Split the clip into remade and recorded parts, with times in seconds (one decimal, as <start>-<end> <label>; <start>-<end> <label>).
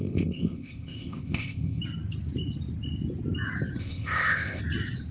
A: 0.0-1.8 remade; 1.8-3.8 recorded; 3.8-4.6 remade; 4.6-5.1 recorded